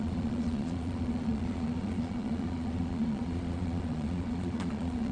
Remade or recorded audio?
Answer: remade